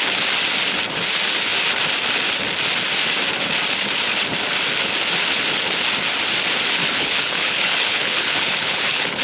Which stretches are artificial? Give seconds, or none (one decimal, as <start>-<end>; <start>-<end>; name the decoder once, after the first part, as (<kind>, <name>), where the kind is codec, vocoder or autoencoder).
6.8-9.2 (codec, HILCodec)